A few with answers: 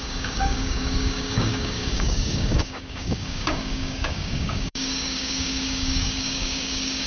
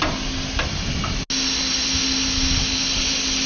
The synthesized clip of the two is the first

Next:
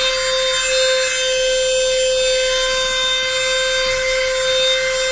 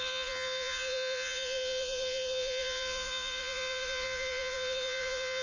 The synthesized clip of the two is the second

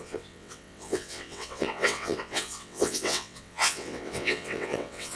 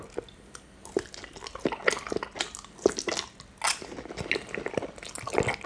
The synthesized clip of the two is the first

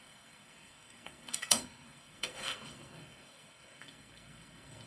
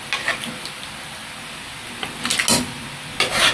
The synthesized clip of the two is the first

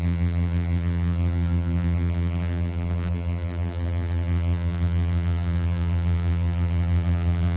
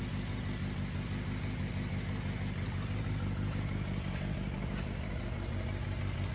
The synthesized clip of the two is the first